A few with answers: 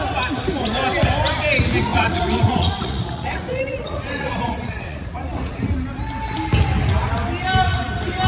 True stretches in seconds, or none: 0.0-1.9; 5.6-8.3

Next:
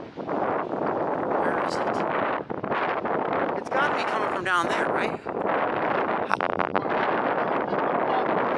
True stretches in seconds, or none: 0.0-6.3; 6.8-8.6

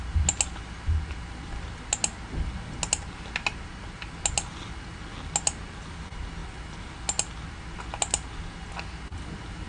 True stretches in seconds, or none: 0.0-6.4; 6.9-9.7

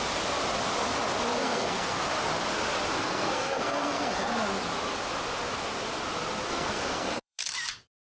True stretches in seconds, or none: 0.0-1.4; 2.0-3.0; 4.3-6.5; 7.4-8.0

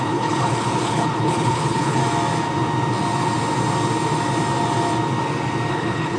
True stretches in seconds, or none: 2.0-5.7

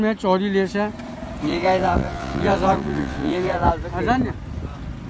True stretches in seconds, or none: 0.0-1.5; 3.7-5.1

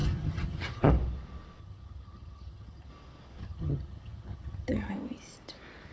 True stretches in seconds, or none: 0.9-1.6; 2.9-3.4; 4.9-5.9